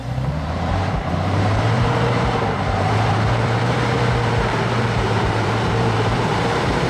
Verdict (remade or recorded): remade